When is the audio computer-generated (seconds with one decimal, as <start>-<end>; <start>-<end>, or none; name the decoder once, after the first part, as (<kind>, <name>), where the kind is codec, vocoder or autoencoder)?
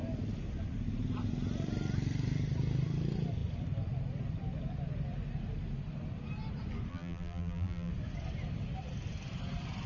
6.9-7.9 (vocoder, BigVGAN v2)